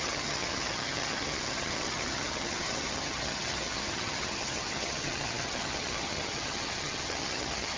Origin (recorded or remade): remade